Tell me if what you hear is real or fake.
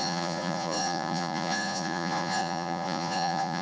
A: fake